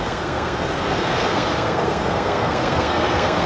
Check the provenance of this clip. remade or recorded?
remade